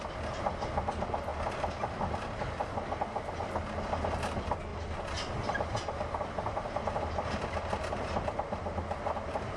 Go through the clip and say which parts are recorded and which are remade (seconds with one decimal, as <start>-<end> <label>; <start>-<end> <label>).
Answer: 0.0-9.6 recorded